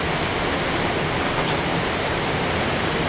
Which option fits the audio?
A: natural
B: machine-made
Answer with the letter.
A